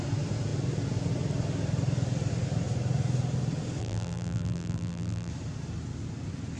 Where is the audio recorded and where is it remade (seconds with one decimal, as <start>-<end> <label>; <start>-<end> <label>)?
0.0-3.8 recorded; 3.8-5.3 remade; 5.3-6.6 recorded